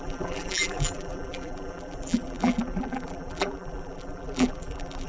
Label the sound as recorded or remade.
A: remade